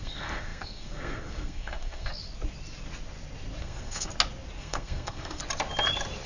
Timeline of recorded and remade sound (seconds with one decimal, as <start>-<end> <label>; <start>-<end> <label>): 0.0-2.1 remade; 2.1-3.6 recorded; 3.6-4.1 remade; 4.1-4.6 recorded; 4.6-5.4 remade; 5.4-6.3 recorded